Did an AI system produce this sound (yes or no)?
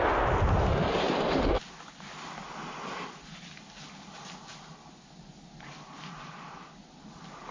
no